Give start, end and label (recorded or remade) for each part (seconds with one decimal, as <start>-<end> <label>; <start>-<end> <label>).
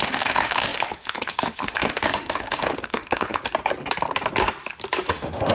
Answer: 0.0-3.4 remade; 3.4-5.1 recorded; 5.1-5.5 remade